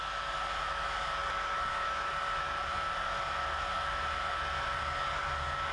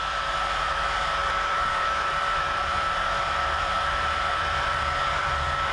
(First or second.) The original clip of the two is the first